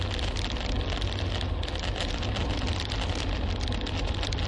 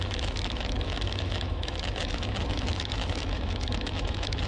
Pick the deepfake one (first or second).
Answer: second